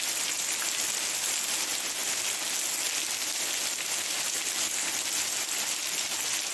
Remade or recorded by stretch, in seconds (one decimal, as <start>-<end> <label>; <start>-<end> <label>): 0.0-6.5 recorded